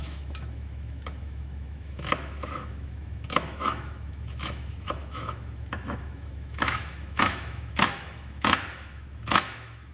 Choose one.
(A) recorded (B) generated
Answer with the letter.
B